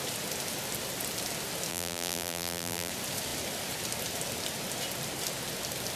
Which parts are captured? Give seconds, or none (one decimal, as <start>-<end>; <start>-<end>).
0.0-1.7; 2.9-6.0